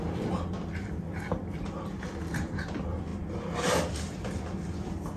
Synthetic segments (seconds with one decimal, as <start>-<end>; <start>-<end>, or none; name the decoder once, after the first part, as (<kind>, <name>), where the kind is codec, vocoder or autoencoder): none